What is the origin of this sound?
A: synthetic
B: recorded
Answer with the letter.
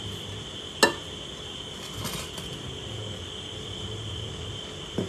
B